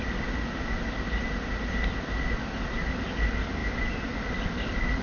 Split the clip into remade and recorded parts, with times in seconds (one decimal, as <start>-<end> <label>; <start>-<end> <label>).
0.0-5.0 recorded